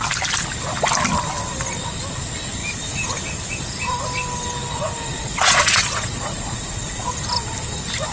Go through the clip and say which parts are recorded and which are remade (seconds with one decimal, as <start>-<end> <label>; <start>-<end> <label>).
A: 0.0-5.1 recorded; 5.1-7.1 remade; 7.1-8.1 recorded